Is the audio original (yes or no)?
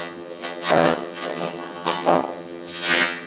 no